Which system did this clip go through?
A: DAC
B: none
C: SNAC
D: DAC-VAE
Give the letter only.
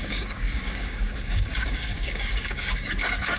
A